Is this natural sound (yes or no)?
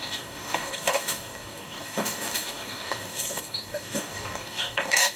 no